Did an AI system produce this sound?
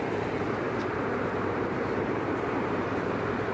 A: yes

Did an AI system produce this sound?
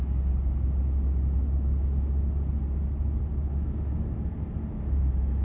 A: no